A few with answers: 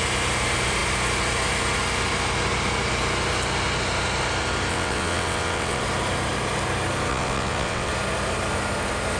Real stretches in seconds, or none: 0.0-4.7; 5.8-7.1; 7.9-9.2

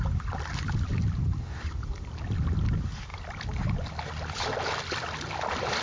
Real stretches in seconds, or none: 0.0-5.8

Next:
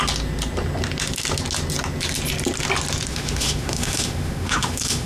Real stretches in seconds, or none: 0.0-3.1

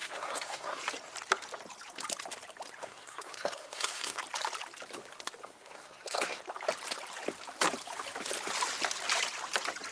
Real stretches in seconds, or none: 0.8-2.8; 4.2-5.4; 6.4-9.9

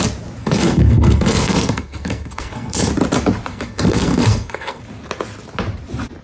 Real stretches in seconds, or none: 0.0-0.4; 2.9-3.5; 4.8-6.2

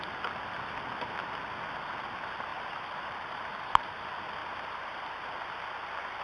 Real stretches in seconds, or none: 0.0-2.5; 4.0-4.4; 5.2-6.2

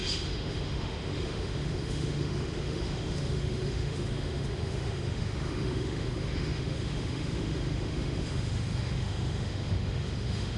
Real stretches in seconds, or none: none

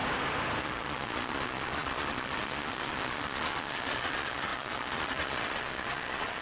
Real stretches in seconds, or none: 0.0-0.6